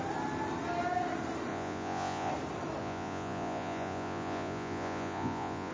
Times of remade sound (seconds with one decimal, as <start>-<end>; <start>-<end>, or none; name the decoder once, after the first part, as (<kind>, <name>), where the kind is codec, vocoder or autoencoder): 1.5-2.3 (vocoder, Vocos); 2.8-5.7